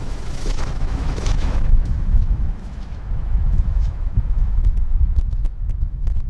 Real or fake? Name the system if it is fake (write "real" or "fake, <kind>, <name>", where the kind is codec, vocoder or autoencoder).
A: fake, autoencoder, DAC-VAE